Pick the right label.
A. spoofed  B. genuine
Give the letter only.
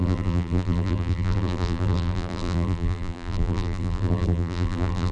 A